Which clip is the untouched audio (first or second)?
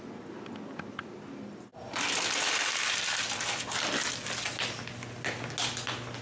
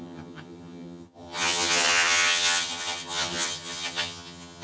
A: first